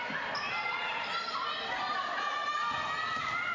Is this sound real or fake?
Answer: real